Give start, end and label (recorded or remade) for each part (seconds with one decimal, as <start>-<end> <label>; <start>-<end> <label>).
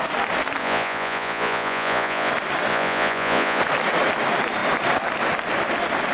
0.0-0.6 recorded; 0.6-2.3 remade; 2.3-2.7 recorded; 2.7-3.6 remade; 3.6-6.1 recorded